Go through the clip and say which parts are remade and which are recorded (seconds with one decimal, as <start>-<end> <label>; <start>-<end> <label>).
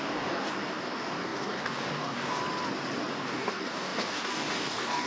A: 0.0-2.4 remade; 2.4-3.1 recorded; 3.1-5.1 remade